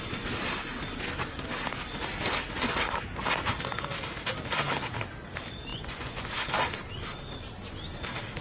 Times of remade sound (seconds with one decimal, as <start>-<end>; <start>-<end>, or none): 5.7-6.3